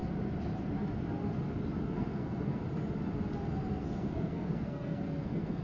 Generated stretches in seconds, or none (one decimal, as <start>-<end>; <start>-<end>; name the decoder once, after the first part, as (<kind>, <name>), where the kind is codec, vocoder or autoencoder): 1.8-2.6 (codec, SNAC); 3.7-5.6